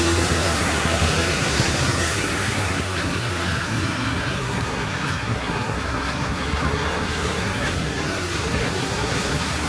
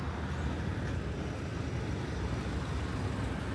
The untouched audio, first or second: second